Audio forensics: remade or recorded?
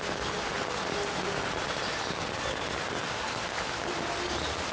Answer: recorded